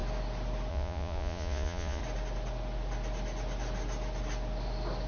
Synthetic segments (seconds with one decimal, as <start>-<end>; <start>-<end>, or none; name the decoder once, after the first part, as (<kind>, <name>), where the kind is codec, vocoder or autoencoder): 0.7-2.0 (vocoder, Vocos)